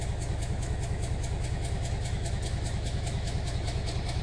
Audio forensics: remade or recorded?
remade